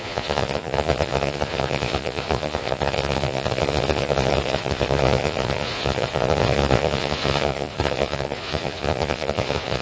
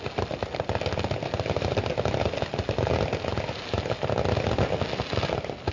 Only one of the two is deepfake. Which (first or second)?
first